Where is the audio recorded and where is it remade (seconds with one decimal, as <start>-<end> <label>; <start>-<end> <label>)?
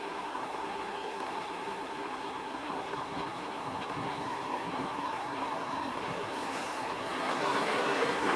0.0-8.4 remade